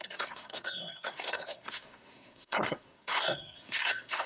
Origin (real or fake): fake